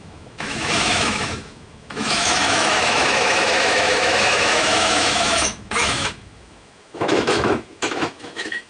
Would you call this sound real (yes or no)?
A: no